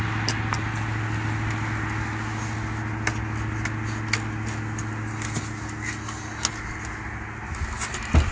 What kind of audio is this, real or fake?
real